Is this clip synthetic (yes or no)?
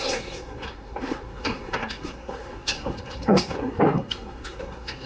yes